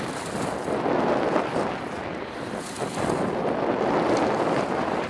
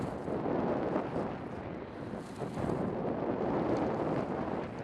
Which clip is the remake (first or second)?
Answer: first